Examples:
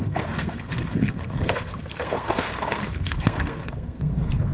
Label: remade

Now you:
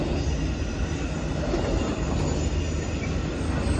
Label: recorded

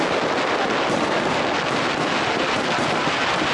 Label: recorded